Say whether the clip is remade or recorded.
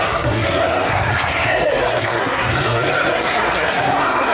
remade